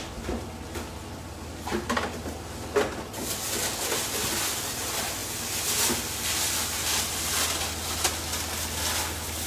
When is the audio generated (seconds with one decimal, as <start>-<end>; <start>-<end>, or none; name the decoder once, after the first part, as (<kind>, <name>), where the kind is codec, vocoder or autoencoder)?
none